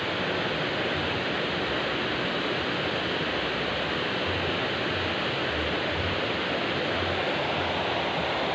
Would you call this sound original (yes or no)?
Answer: yes